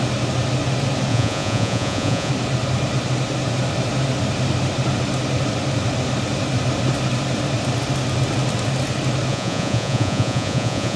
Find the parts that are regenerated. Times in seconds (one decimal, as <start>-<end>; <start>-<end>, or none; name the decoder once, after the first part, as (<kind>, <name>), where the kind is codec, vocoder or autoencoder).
1.1-2.3 (vocoder, Vocos); 9.3-11.0